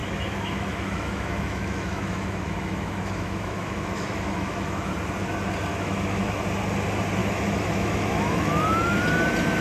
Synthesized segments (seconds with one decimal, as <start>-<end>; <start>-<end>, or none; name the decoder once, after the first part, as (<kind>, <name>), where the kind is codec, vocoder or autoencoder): 0.0-4.9 (autoencoder, DAC-VAE); 5.7-6.4; 7.2-9.0